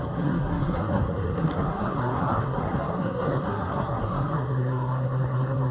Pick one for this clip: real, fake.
fake